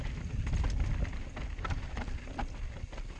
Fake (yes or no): no